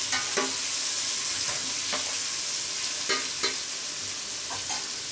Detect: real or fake real